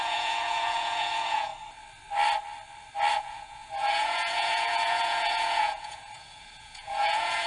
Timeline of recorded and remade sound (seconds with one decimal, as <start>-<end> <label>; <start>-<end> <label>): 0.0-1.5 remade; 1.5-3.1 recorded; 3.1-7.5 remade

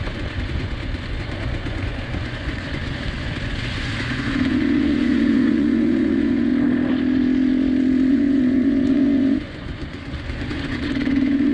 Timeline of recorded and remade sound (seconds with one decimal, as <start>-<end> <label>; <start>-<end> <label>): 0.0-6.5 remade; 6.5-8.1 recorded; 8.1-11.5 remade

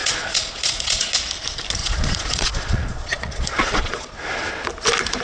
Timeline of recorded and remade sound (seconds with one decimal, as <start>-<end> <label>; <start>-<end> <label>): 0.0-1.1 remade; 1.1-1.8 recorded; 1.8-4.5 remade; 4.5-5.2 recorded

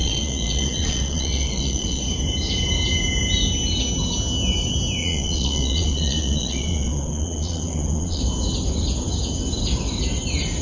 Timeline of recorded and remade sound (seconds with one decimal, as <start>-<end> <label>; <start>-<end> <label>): 0.0-2.0 remade; 2.0-5.0 recorded; 5.0-8.2 remade; 8.2-10.6 recorded

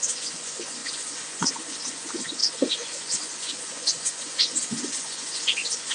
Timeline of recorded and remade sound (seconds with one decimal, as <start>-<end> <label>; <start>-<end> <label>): 0.0-5.9 remade